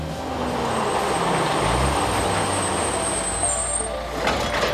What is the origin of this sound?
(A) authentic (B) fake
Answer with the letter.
A